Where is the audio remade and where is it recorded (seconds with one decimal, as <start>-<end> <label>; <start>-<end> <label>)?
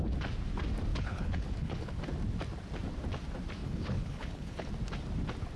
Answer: 0.0-0.9 recorded; 0.9-2.0 remade; 2.0-3.6 recorded; 3.6-4.7 remade; 4.7-5.6 recorded